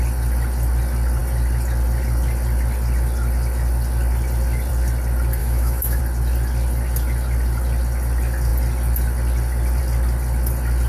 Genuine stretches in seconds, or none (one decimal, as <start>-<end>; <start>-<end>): 0.0-5.4; 6.0-10.9